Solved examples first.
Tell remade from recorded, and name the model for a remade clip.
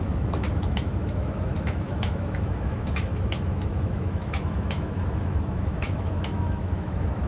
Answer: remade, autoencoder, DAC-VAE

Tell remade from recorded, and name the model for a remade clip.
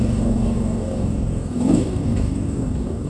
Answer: remade, codec, DAC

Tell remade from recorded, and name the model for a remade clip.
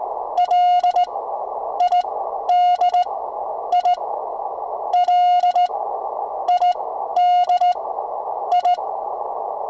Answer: recorded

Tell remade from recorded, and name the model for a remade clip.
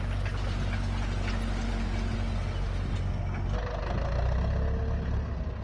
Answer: recorded